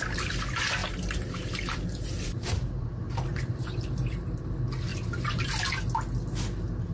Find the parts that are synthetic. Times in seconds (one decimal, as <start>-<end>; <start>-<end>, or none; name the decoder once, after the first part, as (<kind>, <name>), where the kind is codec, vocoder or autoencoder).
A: 0.8-4.4 (vocoder, BigVGAN v2); 4.9-5.5